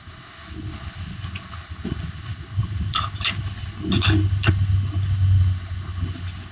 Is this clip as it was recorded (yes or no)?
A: no